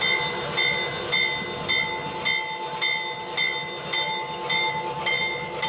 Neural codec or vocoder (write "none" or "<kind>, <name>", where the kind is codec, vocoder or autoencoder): none